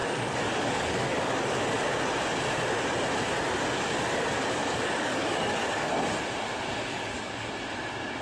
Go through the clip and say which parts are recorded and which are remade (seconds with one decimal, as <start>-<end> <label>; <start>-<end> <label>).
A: 0.0-1.6 remade; 1.6-4.6 recorded; 4.6-5.9 remade; 5.9-6.9 recorded; 6.9-7.5 remade; 7.5-8.2 recorded